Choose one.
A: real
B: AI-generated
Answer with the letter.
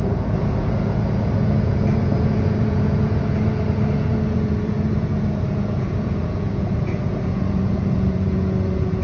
B